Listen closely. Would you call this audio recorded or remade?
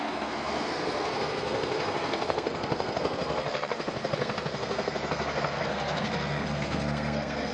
remade